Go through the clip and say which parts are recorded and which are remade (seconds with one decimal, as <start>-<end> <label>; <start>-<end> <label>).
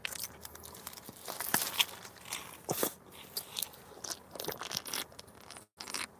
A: 0.0-6.2 recorded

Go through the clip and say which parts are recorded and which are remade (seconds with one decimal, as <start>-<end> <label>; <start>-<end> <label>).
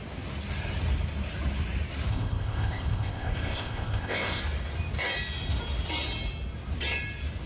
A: 0.0-2.1 recorded; 2.1-4.4 remade; 4.4-7.5 recorded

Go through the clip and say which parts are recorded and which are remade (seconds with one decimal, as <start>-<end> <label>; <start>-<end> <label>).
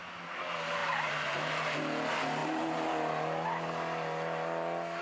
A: 0.0-5.0 recorded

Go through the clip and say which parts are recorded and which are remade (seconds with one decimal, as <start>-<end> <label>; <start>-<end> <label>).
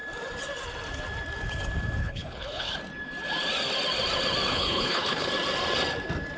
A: 0.0-2.0 recorded; 2.0-2.7 remade; 2.7-4.5 recorded; 4.5-5.3 remade; 5.3-6.4 recorded